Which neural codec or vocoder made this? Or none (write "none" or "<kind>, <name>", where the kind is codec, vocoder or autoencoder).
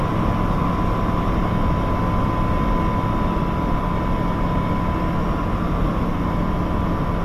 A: none